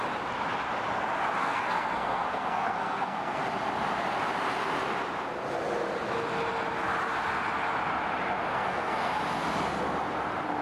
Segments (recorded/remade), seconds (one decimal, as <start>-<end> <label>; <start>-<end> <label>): 0.0-1.4 recorded; 1.4-3.4 remade; 3.4-8.5 recorded; 8.5-9.1 remade; 9.1-10.6 recorded